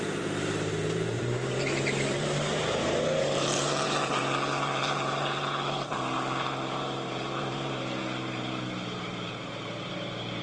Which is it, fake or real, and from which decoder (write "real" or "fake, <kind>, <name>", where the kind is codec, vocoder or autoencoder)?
fake, vocoder, BigVGAN v2